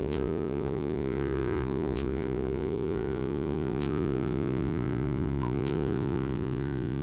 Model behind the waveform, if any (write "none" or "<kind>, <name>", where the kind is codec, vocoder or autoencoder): vocoder, Vocos